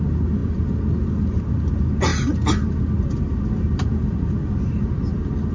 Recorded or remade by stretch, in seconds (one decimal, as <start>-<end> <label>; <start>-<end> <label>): 0.0-5.5 recorded